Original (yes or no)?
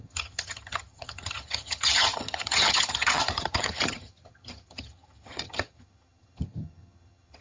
no